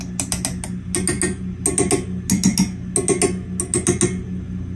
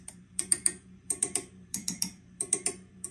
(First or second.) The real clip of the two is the first